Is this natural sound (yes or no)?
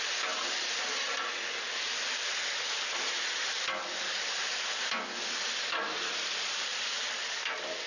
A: yes